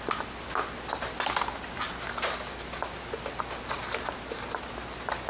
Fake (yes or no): no